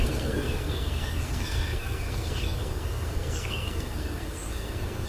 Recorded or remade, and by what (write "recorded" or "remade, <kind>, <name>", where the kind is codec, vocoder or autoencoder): remade, codec, SNAC